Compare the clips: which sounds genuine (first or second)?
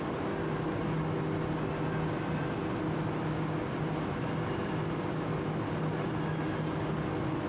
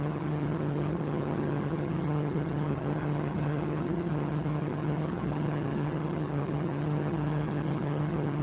first